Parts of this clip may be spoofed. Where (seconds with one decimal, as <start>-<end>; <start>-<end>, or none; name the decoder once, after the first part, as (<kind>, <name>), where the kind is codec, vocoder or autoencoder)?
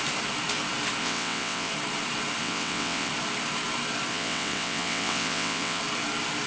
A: 1.0-1.7 (vocoder, WaveNeXt); 2.4-3.1; 4.1-5.8